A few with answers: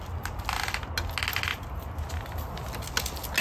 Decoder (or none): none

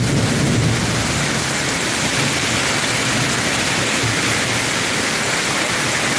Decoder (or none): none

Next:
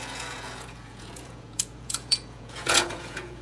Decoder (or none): vocoder, Vocos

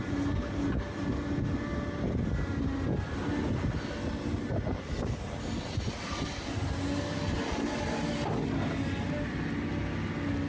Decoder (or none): none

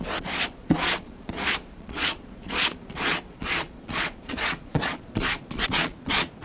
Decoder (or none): vocoder, Vocos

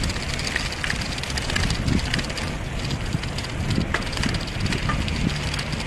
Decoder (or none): none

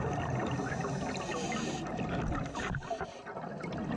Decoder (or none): none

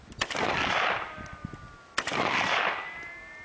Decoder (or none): none